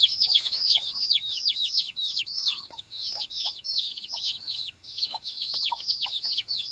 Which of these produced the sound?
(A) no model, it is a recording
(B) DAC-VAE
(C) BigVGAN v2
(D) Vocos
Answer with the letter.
B